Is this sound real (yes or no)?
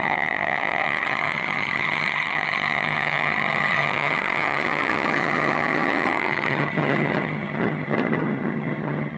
no